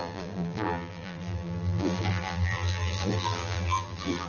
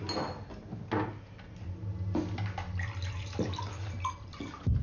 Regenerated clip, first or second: first